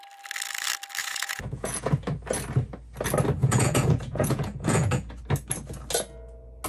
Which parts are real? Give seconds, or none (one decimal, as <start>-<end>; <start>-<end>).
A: 0.0-1.0; 1.9-3.4; 5.1-6.7